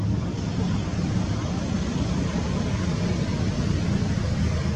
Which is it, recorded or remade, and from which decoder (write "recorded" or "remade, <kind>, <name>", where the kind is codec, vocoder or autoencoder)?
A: recorded